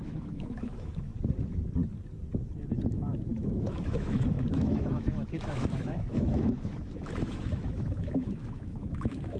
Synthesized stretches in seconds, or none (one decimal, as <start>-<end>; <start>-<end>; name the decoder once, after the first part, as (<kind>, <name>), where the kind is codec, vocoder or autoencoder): 0.0-1.1 (autoencoder, DAC-VAE); 2.9-9.4